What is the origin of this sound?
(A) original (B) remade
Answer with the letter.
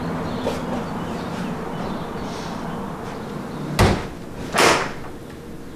A